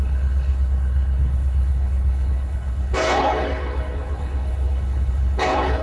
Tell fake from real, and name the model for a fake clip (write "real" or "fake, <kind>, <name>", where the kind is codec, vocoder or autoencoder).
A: fake, codec, HILCodec